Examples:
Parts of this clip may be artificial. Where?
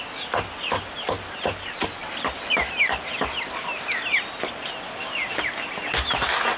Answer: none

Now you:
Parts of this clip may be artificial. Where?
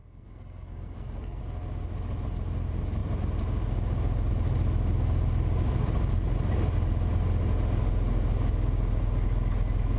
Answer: 0.0-1.4 (codec, SNAC)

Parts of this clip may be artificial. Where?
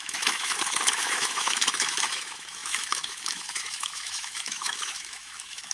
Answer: 0.0-5.7 (autoencoder, DAC-VAE)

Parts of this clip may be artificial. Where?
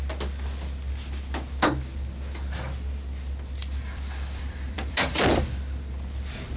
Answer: 3.6-5.4 (vocoder, BigVGAN v2)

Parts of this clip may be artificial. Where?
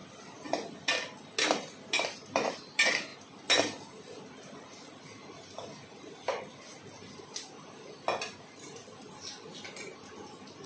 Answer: none